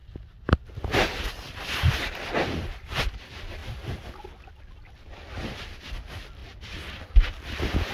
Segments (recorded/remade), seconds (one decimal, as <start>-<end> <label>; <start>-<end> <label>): 0.0-7.9 recorded